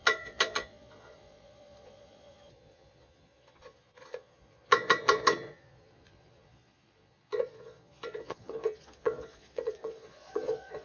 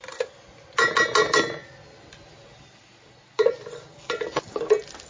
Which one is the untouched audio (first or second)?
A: second